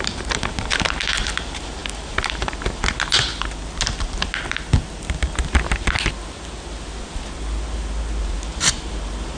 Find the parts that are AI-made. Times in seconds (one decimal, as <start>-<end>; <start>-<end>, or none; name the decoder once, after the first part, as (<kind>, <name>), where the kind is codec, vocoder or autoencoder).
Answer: 0.0-3.3 (vocoder, BigVGAN v2); 8.2-9.4